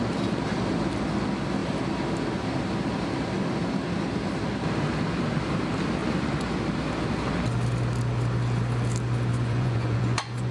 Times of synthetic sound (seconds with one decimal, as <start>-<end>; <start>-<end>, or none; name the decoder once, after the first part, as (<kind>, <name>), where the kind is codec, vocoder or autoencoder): 6.0-6.5 (vocoder, Vocos); 9.3-10.5